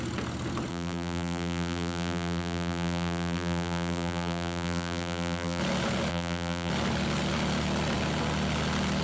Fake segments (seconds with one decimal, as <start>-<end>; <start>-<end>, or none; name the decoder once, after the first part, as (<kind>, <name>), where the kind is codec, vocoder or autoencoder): 0.7-5.6 (vocoder, BigVGAN v2); 6.1-6.7